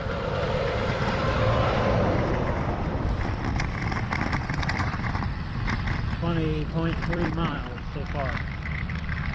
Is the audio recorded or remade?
remade